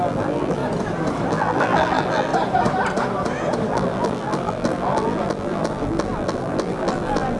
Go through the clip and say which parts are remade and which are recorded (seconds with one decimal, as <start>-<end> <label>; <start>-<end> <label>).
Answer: 0.0-0.6 remade; 0.6-1.3 recorded; 1.3-2.3 remade; 2.3-3.7 recorded; 3.7-7.4 remade